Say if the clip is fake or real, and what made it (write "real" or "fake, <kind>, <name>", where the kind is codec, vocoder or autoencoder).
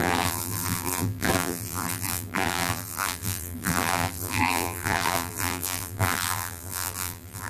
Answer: fake, vocoder, BigVGAN v2